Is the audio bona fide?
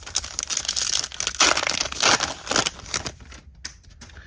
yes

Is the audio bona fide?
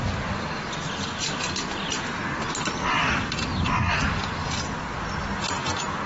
yes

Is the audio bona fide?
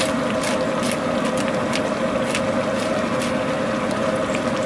yes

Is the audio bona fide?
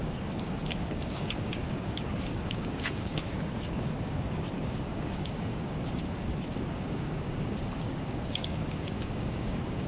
no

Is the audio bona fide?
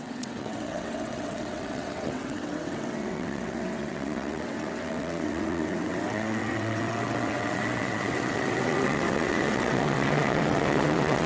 no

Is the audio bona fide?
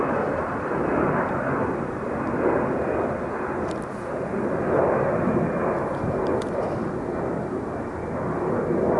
yes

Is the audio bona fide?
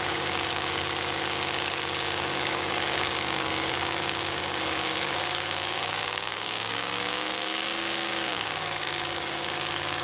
no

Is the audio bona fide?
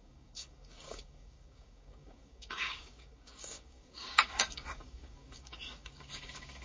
no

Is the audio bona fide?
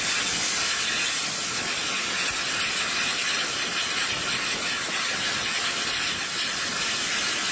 yes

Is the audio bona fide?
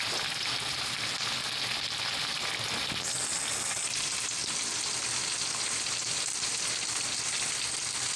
yes